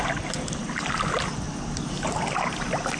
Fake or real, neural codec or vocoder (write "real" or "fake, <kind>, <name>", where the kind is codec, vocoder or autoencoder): real